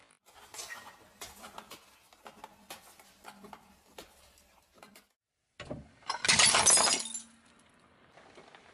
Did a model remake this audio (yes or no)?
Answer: no